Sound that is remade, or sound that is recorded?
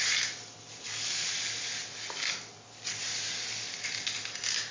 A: recorded